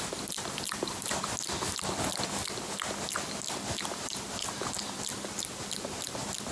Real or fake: real